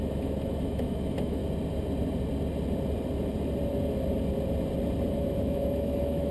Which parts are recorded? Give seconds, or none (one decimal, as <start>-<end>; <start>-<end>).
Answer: 1.4-5.1